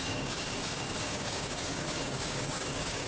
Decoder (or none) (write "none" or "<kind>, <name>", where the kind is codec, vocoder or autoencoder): codec, DAC